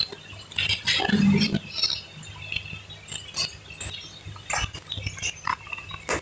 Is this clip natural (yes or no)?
yes